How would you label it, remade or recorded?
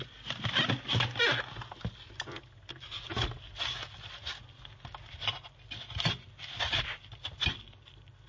recorded